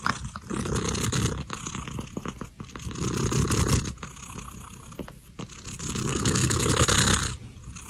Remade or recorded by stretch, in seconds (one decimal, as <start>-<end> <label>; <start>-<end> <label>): 0.0-6.1 recorded; 6.1-6.7 remade; 6.7-7.9 recorded